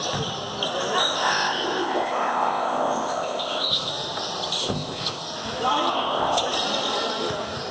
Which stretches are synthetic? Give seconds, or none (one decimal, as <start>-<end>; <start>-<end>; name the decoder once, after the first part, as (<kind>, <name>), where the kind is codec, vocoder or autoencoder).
1.0-3.9 (codec, ZipCodec); 4.6-5.2; 5.9-6.4